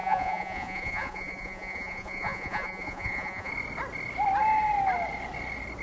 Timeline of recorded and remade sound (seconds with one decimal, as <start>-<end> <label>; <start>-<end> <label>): 0.0-3.5 remade; 3.5-5.8 recorded